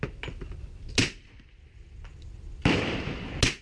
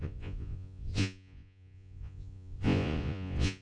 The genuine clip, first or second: first